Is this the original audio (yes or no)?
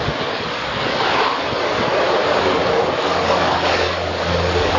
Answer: no